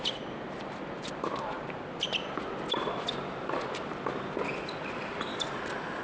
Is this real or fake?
real